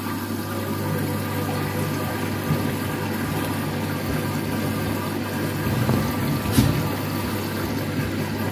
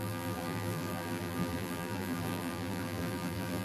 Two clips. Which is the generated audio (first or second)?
second